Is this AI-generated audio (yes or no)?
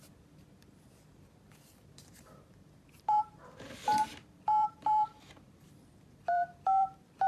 yes